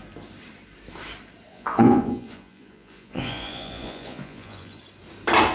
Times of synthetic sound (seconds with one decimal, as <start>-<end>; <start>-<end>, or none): 1.5-4.8